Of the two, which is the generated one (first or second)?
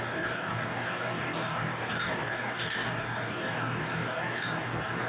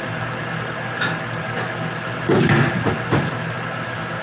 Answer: first